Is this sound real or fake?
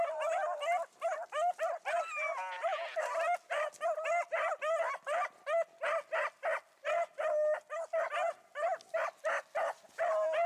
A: real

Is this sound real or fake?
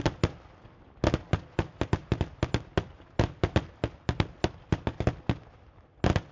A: real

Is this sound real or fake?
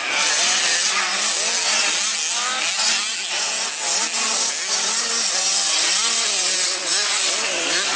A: real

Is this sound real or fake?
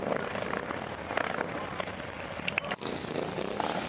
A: real